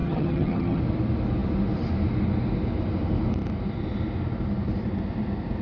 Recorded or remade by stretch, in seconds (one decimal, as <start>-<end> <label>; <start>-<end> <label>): 0.0-0.8 remade; 0.8-5.6 recorded